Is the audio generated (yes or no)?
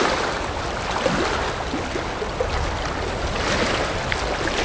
no